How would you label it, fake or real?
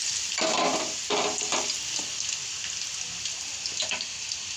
real